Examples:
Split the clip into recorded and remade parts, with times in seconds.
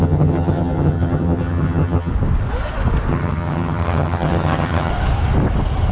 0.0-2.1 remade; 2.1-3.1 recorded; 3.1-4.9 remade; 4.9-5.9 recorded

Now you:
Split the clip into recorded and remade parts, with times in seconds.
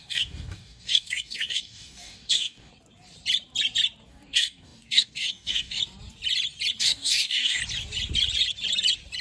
0.0-2.7 remade; 2.7-4.1 recorded; 4.1-5.8 remade; 5.8-6.8 recorded; 6.8-7.6 remade; 7.6-9.2 recorded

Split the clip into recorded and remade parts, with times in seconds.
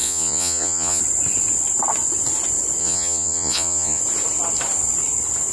0.0-1.0 remade; 1.0-2.8 recorded; 2.8-4.0 remade; 4.0-5.5 recorded